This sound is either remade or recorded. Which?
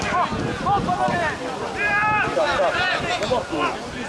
recorded